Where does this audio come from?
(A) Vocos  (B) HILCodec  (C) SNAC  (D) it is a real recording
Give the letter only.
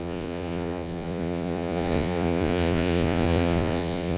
A